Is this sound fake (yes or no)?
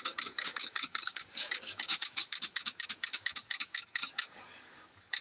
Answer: yes